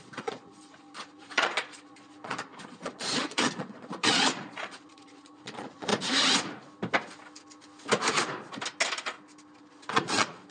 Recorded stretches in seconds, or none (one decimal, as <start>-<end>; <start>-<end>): 5.9-9.6